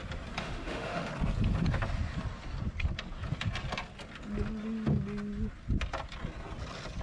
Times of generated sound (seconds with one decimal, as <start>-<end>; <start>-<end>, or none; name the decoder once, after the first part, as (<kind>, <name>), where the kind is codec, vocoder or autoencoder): 0.4-1.1 (autoencoder, DAC-VAE)